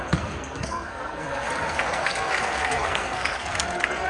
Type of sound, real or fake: fake